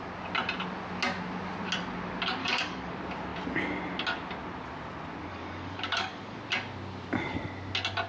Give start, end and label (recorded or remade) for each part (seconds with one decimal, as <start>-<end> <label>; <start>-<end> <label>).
0.0-2.4 recorded; 2.4-2.9 remade; 2.9-5.3 recorded; 5.3-6.4 remade; 6.4-8.1 recorded

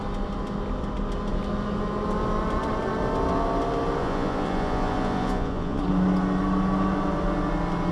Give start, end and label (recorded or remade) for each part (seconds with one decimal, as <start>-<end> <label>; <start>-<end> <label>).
0.0-4.0 recorded; 4.0-5.8 remade; 5.8-7.9 recorded

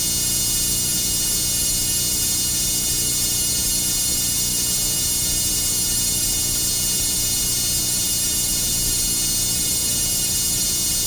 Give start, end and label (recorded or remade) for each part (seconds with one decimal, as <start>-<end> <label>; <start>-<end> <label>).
0.0-11.1 remade

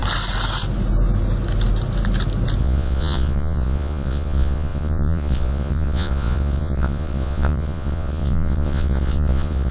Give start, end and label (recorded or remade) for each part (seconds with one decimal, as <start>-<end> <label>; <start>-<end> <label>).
0.0-2.6 recorded; 2.6-9.7 remade

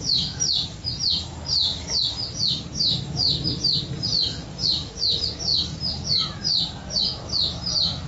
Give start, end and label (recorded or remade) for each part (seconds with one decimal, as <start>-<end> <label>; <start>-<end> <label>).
0.0-8.1 recorded